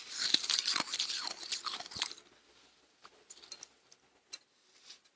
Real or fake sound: real